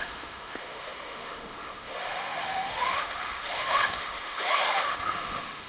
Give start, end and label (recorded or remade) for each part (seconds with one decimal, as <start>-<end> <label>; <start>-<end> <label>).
0.0-5.7 remade